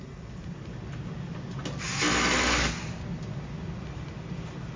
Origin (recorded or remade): recorded